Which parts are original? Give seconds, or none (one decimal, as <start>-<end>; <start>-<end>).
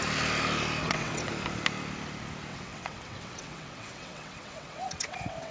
0.0-0.8; 1.3-2.5